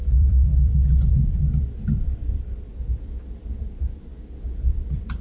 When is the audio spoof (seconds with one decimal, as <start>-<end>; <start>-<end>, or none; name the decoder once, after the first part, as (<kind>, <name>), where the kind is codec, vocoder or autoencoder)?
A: 0.0-5.2 (vocoder, BigVGAN v2)